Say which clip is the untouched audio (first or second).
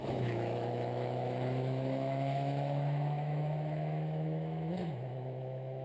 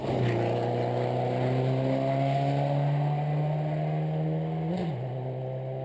second